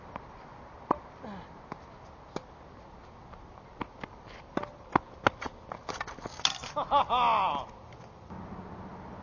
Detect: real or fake real